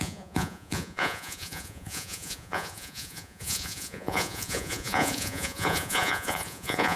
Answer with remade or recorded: remade